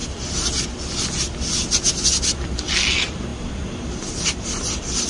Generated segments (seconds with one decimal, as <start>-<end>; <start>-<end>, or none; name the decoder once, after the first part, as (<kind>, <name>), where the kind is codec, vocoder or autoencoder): none